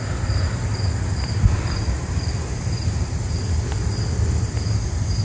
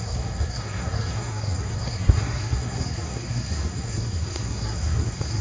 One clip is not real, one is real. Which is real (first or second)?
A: first